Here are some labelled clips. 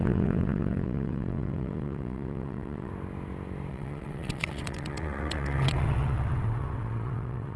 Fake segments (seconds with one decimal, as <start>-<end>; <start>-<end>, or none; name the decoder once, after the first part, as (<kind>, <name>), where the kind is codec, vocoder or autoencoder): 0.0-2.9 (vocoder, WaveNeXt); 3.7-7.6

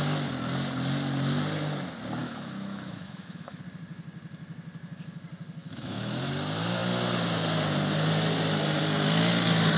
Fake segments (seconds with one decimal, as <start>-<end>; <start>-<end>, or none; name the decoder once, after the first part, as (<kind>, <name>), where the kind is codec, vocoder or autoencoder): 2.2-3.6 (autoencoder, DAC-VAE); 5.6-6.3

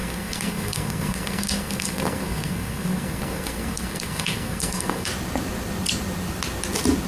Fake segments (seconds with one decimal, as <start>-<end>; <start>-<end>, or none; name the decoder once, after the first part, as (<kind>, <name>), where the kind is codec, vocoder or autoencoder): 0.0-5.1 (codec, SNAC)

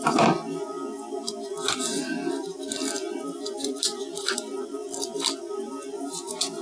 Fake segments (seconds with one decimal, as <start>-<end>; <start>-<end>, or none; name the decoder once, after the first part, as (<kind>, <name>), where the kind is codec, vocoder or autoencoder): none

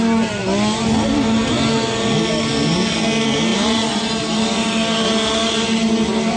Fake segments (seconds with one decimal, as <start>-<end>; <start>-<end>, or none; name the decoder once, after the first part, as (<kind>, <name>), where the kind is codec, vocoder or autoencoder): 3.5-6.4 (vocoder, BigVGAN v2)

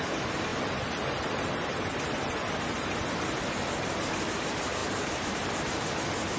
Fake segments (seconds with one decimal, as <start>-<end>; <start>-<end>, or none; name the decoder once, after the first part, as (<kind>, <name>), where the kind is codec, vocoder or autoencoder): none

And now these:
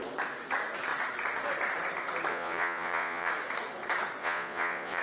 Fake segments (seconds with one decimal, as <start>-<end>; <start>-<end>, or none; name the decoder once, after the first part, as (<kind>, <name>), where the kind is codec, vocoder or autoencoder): 2.3-3.3 (vocoder, Vocos); 4.2-5.0